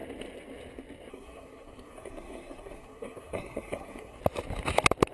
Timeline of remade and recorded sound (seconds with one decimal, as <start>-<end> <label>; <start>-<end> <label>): 0.0-1.1 recorded; 1.1-4.2 remade; 4.2-5.1 recorded